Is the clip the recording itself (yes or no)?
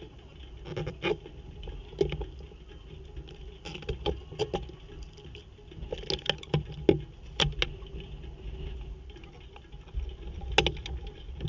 yes